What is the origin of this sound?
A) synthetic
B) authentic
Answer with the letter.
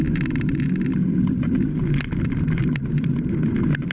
B